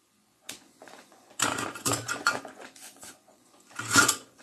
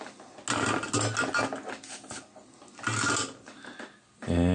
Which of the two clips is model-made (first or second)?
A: first